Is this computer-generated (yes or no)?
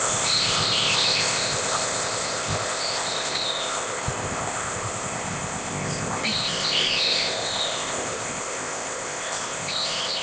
yes